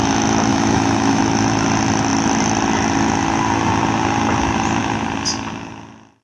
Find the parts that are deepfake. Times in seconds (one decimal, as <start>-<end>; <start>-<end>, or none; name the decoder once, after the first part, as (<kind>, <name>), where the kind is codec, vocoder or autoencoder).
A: 0.5-1.2 (autoencoder, DAC-VAE)